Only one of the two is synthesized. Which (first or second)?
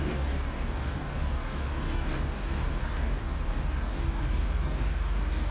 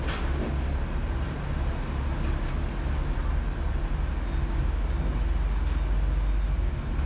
first